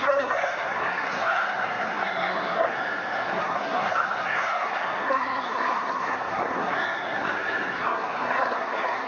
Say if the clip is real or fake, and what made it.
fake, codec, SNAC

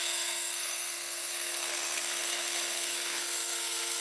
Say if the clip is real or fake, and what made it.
fake, codec, SNAC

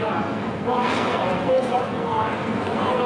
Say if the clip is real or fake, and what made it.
fake, codec, SNAC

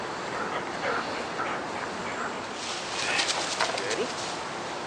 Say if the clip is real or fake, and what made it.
real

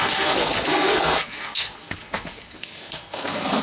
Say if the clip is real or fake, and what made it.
fake, codec, SNAC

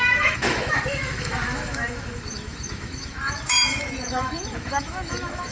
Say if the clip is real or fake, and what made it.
fake, autoencoder, DAC-VAE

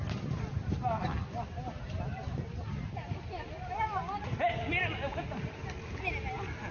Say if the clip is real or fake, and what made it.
real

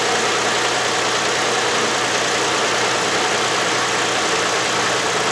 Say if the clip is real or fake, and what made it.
real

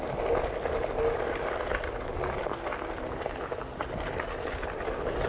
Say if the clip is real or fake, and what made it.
real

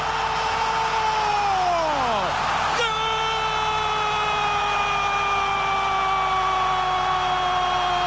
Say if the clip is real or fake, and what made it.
real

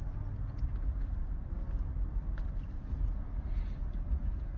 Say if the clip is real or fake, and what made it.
real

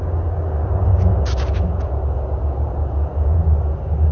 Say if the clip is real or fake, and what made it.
real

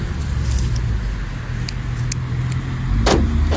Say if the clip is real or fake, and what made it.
real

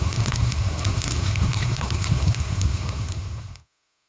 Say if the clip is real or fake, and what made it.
fake, codec, SNAC